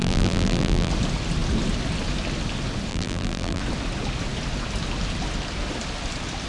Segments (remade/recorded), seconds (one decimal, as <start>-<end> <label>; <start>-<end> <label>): 0.0-0.9 remade; 0.9-2.9 recorded; 2.9-3.6 remade; 3.6-6.5 recorded